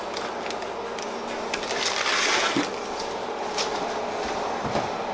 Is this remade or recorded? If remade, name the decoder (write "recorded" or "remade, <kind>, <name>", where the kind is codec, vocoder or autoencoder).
recorded